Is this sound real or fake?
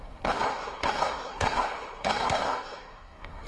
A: fake